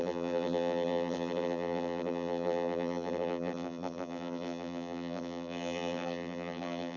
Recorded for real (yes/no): no